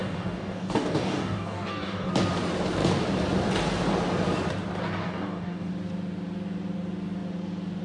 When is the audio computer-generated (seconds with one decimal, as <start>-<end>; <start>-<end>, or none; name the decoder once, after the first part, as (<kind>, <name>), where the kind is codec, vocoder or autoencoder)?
0.0-2.1 (codec, DAC); 5.0-5.7